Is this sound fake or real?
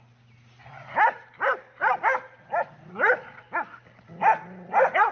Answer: real